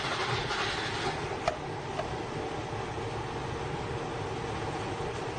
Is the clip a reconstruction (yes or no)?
no